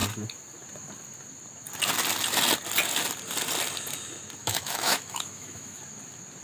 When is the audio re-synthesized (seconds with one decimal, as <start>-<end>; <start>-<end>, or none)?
4.4-5.8